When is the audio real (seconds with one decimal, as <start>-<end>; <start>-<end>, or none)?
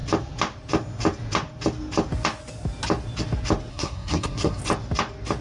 0.0-3.7; 4.6-5.4